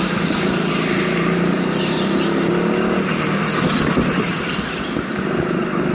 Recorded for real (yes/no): yes